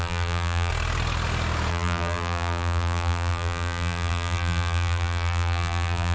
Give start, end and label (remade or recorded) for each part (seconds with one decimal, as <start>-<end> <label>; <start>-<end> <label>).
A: 0.0-0.7 remade; 0.7-1.7 recorded; 1.7-6.1 remade